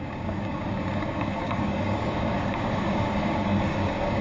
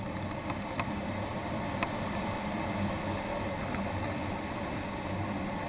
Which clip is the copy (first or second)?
first